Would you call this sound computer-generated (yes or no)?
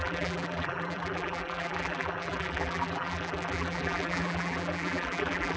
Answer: yes